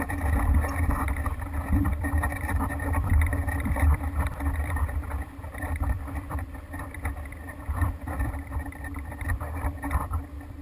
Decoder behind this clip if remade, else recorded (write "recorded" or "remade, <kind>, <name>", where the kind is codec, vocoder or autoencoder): remade, vocoder, BigVGAN v2